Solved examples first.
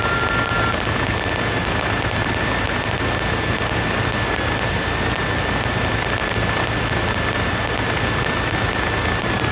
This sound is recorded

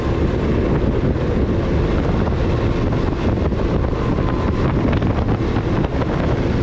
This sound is recorded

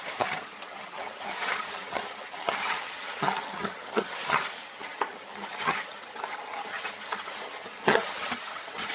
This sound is remade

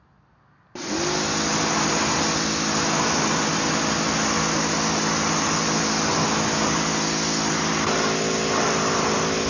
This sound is recorded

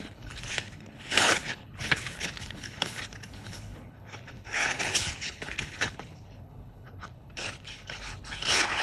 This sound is remade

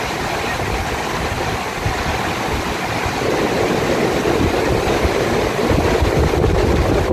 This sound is recorded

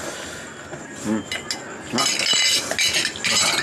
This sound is recorded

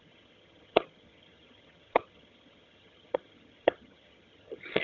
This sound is remade